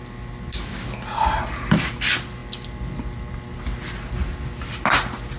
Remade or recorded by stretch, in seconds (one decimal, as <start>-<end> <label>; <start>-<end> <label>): 0.0-5.4 recorded

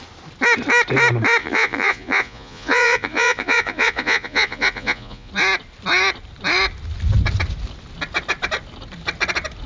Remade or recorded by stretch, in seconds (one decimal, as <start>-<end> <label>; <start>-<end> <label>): 0.0-1.4 recorded; 1.4-5.3 remade; 5.3-9.7 recorded

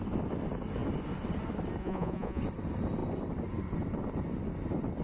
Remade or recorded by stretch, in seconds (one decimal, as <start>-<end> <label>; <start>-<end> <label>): 0.0-1.8 recorded; 1.8-2.4 remade; 2.4-5.0 recorded

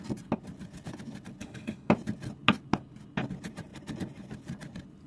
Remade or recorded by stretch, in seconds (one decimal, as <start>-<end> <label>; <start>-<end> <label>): 0.0-1.4 recorded; 1.4-1.9 remade; 1.9-5.1 recorded